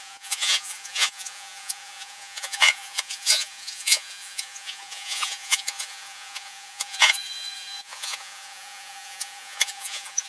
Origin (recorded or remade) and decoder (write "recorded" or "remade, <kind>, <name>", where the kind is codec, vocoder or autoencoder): remade, vocoder, Vocos